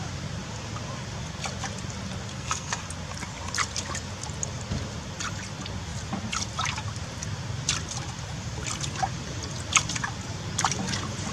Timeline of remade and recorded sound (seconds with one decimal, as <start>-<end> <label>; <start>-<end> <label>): 0.0-2.3 recorded; 2.3-2.8 remade; 2.8-11.3 recorded